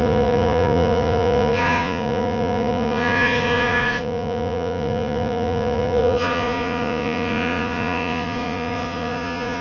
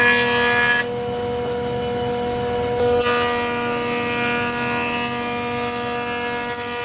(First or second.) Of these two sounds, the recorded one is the second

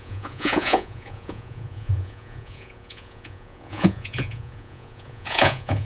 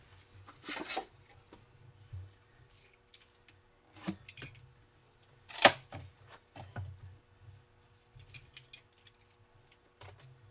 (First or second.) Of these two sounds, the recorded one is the second